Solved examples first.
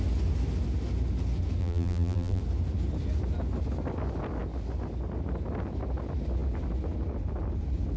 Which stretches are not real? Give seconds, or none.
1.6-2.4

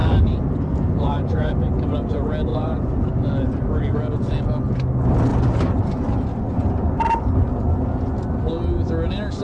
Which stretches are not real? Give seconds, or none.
0.0-1.5; 2.5-3.1; 5.3-7.5

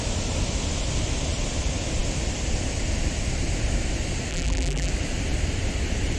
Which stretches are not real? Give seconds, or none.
4.3-4.9

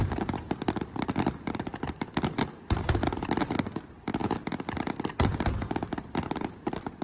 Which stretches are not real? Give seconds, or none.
0.0-1.7; 2.5-4.2

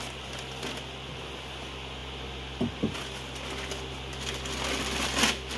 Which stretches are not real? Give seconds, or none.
none

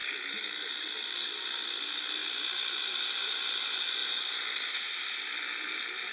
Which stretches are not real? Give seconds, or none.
0.0-0.6; 4.0-4.7

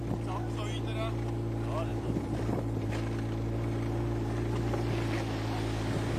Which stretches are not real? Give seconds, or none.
1.9-2.9